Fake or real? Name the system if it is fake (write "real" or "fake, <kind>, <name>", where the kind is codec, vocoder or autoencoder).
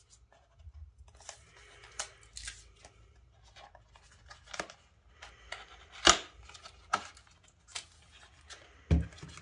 real